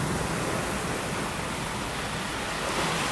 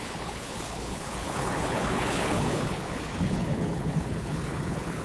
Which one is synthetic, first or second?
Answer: second